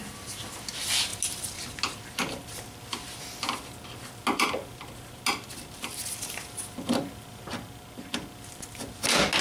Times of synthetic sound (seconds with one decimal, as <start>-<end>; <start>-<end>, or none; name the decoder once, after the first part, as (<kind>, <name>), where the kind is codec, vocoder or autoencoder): none